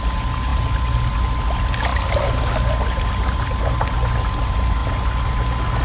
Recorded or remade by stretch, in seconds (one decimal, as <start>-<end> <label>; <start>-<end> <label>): 0.0-5.8 recorded